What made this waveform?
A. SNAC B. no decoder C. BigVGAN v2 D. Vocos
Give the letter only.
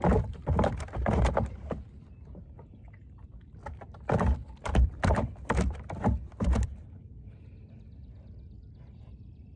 C